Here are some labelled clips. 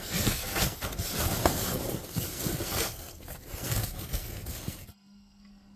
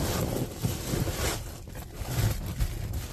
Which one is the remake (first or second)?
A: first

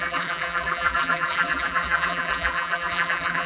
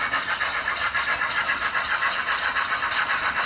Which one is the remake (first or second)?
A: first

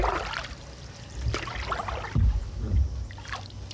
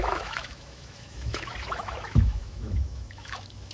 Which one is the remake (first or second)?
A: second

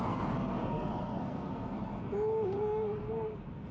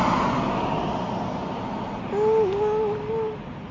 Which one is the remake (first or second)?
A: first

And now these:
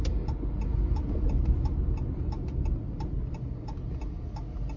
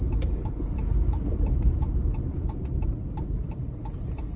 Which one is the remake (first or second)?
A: second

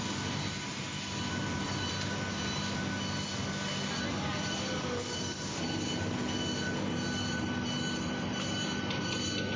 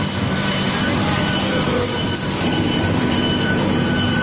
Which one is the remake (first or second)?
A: second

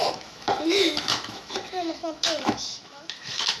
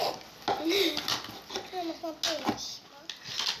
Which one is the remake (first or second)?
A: first